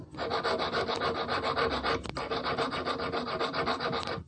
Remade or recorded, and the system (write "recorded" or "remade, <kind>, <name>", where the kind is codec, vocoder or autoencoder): recorded